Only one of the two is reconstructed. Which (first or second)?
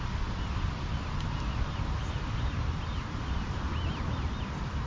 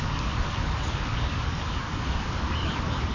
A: second